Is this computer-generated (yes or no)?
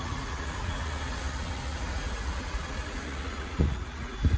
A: yes